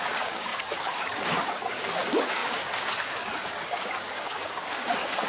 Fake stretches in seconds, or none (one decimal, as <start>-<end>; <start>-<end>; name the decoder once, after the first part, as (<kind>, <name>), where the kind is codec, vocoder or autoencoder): 0.0-5.3 (codec, DAC)